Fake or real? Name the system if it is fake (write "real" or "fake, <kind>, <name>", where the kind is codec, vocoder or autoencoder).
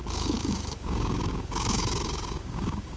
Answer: fake, codec, DAC